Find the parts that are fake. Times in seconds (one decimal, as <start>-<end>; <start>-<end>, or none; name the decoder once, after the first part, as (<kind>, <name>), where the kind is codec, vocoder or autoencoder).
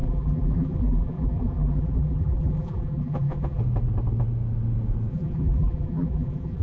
0.0-3.6 (vocoder, BigVGAN v2); 5.1-6.6